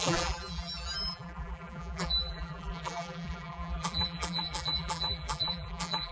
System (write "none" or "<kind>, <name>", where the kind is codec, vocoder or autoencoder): vocoder, BigVGAN v2